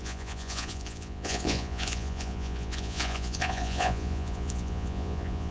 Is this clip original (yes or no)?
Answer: no